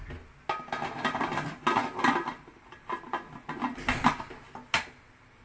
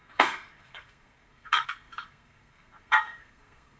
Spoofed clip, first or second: second